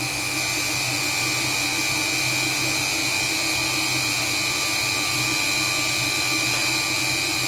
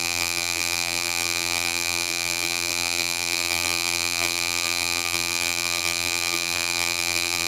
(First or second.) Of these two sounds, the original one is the first